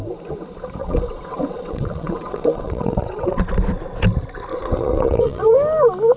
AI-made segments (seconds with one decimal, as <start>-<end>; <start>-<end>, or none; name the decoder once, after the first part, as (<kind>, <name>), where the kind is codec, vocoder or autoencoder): 0.8-3.4 (vocoder, WaveNeXt); 4.5-5.5